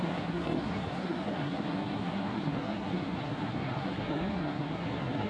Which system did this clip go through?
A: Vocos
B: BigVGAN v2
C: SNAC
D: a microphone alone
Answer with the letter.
C